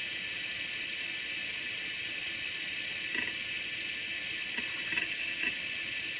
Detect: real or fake real